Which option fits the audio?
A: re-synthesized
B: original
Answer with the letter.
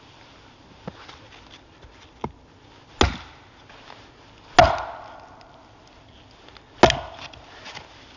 B